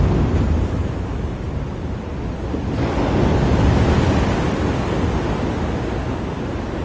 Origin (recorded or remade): recorded